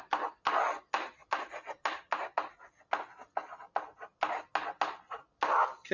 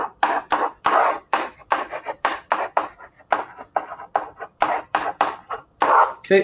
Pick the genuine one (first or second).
first